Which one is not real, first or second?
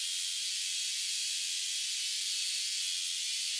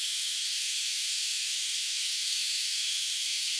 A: second